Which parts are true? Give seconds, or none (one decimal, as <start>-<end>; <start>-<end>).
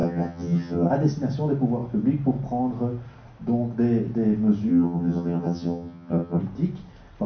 0.9-4.7; 6.4-7.3